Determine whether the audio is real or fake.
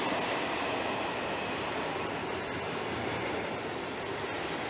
real